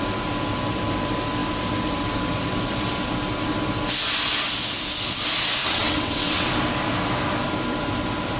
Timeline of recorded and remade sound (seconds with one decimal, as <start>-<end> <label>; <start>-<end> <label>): 0.0-5.6 recorded; 5.6-6.5 remade; 6.5-8.4 recorded